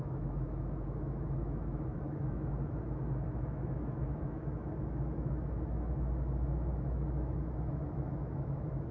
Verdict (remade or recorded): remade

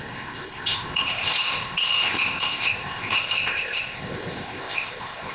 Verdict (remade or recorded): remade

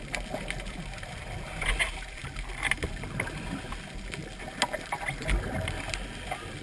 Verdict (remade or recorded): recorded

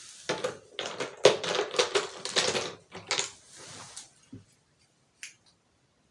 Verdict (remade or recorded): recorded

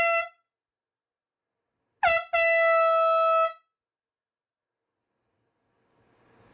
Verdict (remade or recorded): recorded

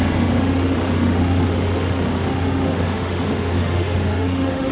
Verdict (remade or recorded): remade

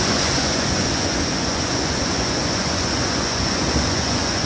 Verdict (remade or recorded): remade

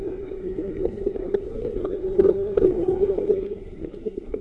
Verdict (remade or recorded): remade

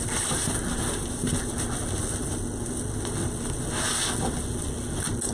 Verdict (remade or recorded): recorded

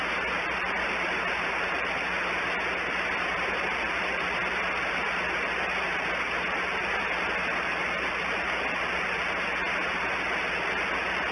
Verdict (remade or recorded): recorded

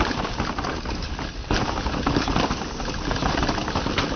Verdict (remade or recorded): recorded